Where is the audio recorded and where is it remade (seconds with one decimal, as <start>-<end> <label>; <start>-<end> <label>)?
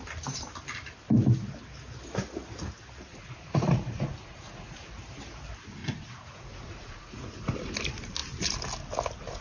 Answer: 0.0-3.1 recorded; 3.1-4.9 remade; 4.9-5.8 recorded; 5.8-7.2 remade; 7.2-9.4 recorded